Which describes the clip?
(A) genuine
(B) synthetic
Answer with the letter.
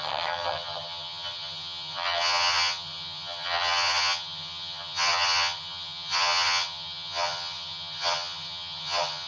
B